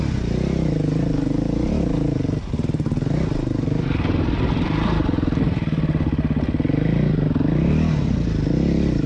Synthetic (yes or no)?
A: no